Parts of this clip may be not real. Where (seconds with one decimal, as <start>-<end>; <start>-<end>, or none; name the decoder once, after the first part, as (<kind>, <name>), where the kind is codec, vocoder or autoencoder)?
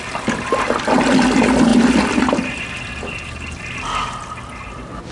none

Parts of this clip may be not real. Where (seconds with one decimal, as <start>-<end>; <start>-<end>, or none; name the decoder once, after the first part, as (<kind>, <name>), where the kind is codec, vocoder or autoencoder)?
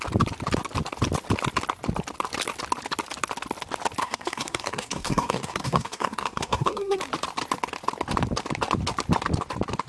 4.0-7.0 (codec, SNAC)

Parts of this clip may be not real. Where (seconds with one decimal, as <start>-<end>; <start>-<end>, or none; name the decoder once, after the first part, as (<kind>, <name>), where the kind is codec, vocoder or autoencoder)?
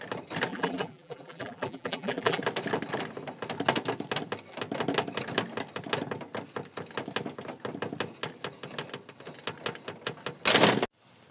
0.5-2.4 (vocoder, BigVGAN v2)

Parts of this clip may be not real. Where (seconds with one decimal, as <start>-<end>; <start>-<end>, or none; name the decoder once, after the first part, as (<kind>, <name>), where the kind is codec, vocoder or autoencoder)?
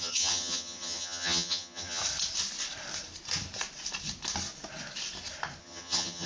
0.0-2.0 (vocoder, HiFi-GAN); 5.6-6.3